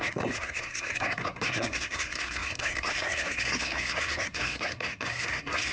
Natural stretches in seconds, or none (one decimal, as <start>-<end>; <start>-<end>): none